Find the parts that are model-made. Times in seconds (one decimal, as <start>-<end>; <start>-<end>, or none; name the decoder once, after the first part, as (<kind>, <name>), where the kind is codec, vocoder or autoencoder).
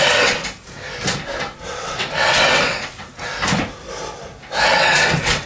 0.0-0.4 (vocoder, WaveNeXt); 1.7-3.3; 4.7-5.5